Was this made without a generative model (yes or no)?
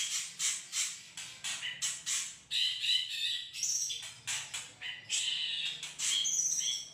yes